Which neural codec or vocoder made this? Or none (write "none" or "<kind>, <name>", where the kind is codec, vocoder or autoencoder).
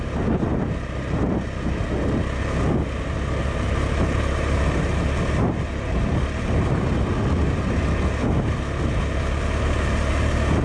none